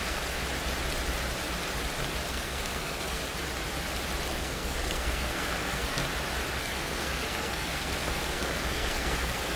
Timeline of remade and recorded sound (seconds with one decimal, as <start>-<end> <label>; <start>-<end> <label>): 0.0-0.4 remade; 0.4-2.3 recorded; 2.3-3.2 remade; 3.2-4.3 recorded; 4.3-6.0 remade; 6.0-6.6 recorded; 6.6-9.6 remade